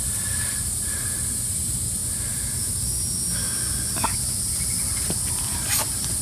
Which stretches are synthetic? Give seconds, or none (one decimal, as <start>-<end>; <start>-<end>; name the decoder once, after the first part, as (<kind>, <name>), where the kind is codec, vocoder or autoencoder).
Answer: 0.0-2.0 (vocoder, BigVGAN v2); 4.2-6.2